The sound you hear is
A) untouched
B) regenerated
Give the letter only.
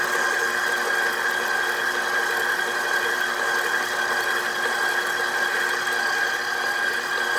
A